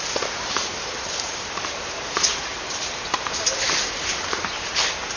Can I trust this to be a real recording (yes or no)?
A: no